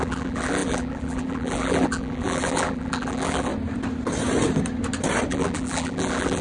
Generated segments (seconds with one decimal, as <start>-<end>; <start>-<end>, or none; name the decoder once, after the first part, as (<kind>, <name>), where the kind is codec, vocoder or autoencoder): 0.0-3.5 (vocoder, BigVGAN v2); 5.3-6.4